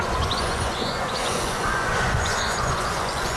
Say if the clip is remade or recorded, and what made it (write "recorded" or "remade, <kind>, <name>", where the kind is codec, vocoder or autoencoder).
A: remade, vocoder, Vocos